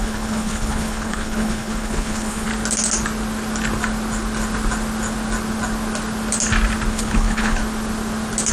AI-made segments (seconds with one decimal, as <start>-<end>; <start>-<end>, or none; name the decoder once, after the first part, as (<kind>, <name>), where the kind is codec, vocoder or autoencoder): 0.0-2.5 (codec, HILCodec); 6.9-7.6